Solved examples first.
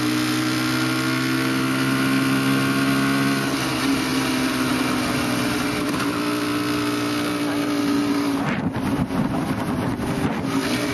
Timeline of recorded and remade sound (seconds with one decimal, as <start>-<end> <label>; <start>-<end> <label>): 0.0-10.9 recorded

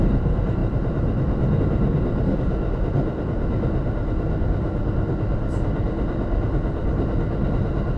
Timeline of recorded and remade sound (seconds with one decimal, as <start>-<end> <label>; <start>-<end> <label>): 0.0-8.0 recorded

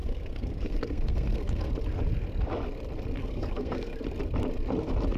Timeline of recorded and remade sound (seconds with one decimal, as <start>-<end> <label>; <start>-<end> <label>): 0.0-1.7 remade; 1.7-3.2 recorded; 3.2-4.0 remade; 4.0-5.2 recorded

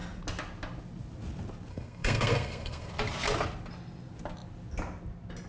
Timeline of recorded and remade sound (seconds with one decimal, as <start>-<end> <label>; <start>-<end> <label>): 0.0-1.7 recorded; 1.7-2.9 remade; 2.9-5.5 recorded

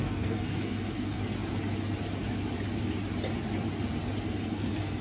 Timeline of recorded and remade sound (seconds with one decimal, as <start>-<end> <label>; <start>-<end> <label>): 0.0-1.2 remade; 1.2-4.2 recorded; 4.2-5.0 remade